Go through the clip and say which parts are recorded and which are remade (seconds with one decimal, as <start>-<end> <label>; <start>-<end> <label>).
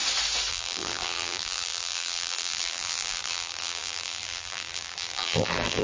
0.0-0.5 recorded; 0.5-5.8 remade